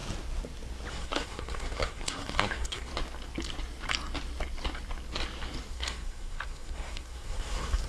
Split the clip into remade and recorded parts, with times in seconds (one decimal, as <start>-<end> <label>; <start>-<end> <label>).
0.0-0.9 recorded; 0.9-2.9 remade; 2.9-5.7 recorded; 5.7-7.9 remade